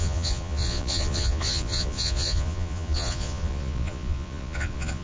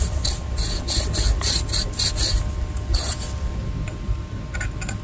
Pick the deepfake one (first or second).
first